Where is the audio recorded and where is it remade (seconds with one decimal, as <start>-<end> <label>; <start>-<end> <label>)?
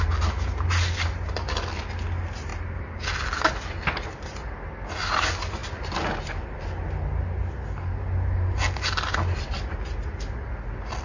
0.0-11.0 recorded